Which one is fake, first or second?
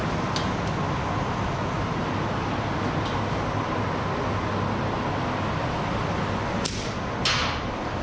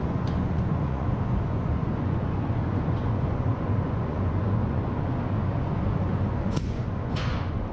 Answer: second